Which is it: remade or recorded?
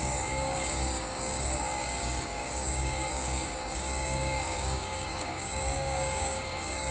remade